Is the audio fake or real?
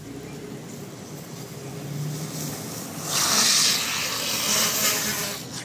real